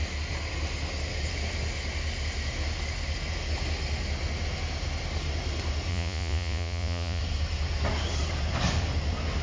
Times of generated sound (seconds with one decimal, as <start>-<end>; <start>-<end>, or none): 5.9-7.2

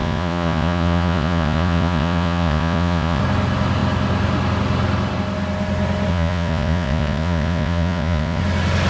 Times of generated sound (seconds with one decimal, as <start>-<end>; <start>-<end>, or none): 0.0-3.2; 6.1-8.4

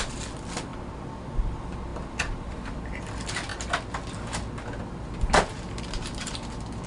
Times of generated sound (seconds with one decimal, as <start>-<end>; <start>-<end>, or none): none